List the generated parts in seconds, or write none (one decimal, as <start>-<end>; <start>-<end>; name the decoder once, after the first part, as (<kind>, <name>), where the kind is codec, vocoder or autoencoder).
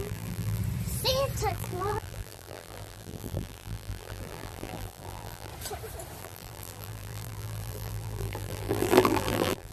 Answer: 0.0-0.6 (vocoder, BigVGAN v2); 1.5-5.5; 6.2-9.7